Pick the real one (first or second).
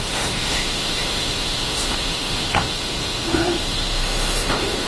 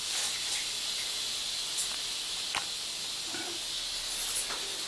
second